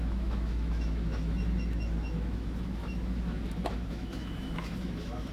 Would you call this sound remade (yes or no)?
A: yes